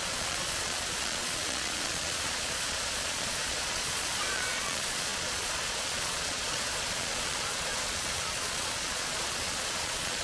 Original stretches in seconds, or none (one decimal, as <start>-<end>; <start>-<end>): none